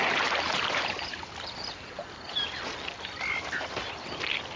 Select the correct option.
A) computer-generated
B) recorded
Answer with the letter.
B